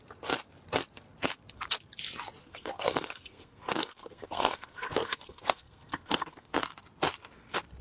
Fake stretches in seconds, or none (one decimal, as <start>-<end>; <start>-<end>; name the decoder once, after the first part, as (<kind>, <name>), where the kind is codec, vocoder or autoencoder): 2.4-6.5 (codec, SNAC)